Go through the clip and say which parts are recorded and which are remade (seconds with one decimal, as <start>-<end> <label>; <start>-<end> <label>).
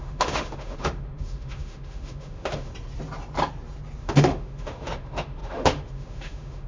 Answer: 0.0-2.7 remade; 2.7-4.0 recorded; 4.0-6.7 remade